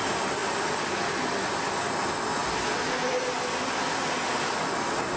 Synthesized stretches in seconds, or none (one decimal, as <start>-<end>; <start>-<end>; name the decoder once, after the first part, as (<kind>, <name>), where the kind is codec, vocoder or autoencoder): none